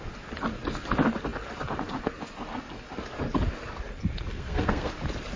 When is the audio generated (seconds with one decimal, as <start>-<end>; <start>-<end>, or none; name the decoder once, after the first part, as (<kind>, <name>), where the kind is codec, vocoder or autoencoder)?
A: 4.3-4.9 (codec, SNAC)